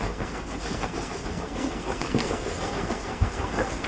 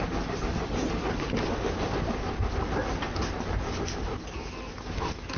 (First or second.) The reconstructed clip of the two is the first